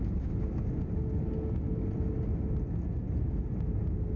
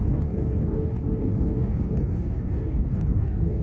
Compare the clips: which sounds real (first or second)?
first